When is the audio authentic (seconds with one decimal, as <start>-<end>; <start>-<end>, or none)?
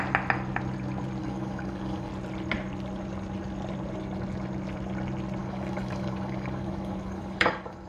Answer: 0.0-1.2; 2.1-5.4